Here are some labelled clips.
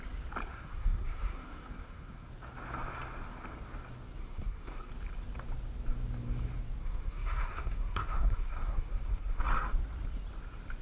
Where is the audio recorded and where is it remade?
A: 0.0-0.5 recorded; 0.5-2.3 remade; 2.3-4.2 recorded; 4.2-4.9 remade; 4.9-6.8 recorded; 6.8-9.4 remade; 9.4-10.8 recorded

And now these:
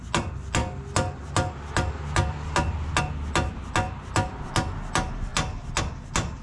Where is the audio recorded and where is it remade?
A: 0.0-6.4 recorded

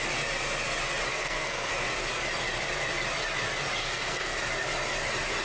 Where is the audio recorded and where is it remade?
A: 0.0-1.1 recorded; 1.1-1.7 remade; 1.7-3.8 recorded; 3.8-4.4 remade; 4.4-5.4 recorded

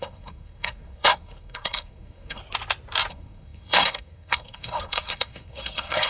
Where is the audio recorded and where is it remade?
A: 0.0-2.4 remade; 2.4-3.1 recorded; 3.1-6.1 remade

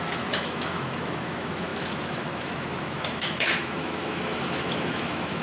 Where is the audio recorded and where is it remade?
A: 0.0-5.4 remade

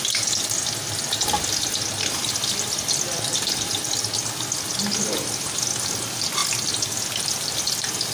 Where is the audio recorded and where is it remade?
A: 0.0-8.1 recorded

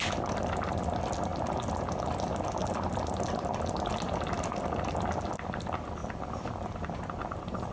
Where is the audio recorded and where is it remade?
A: 0.0-7.7 recorded